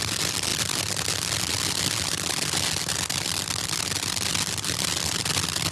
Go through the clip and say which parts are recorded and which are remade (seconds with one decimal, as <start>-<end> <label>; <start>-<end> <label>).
0.0-5.7 recorded